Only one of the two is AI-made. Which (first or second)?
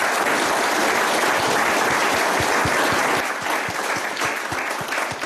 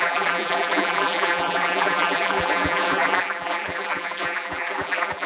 second